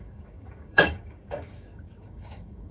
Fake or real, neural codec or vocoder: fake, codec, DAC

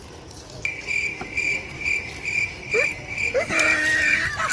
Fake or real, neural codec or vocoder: real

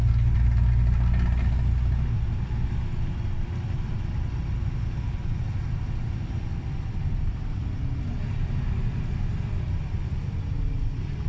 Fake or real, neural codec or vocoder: real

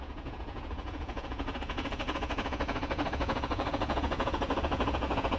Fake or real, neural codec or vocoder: fake, vocoder, Vocos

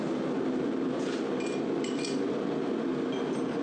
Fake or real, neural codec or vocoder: real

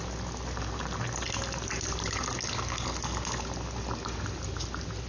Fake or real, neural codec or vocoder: real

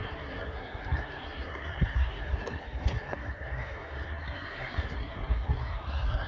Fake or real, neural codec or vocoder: fake, codec, SNAC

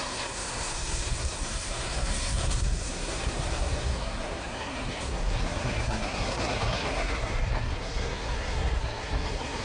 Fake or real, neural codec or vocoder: fake, codec, SNAC